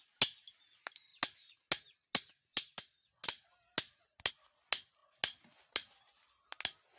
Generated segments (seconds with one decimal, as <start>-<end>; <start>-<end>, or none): none